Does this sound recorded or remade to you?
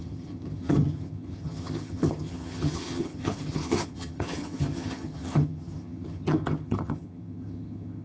remade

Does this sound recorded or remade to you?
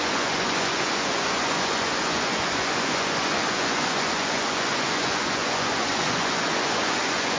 remade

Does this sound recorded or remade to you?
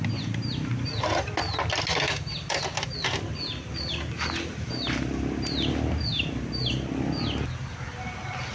recorded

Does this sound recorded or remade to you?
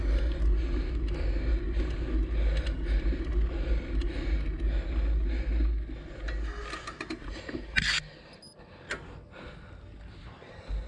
recorded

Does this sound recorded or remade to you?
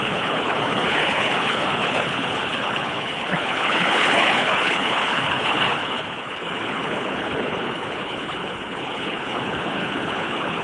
remade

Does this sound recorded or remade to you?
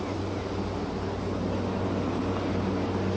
recorded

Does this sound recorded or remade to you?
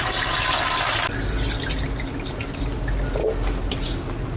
recorded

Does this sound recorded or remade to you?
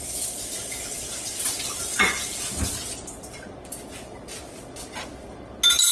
recorded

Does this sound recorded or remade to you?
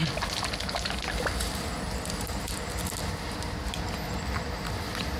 recorded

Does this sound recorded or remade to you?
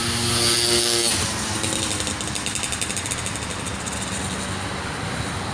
recorded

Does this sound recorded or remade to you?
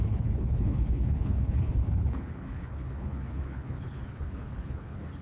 remade